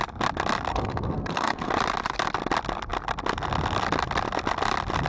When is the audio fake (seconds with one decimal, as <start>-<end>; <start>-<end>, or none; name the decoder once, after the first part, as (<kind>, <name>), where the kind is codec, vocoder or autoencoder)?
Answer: 0.7-1.7 (codec, SNAC)